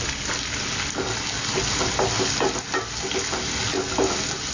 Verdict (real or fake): real